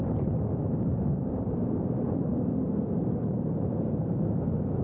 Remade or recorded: remade